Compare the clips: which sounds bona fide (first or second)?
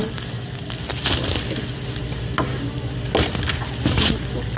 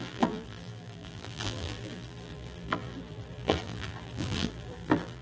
first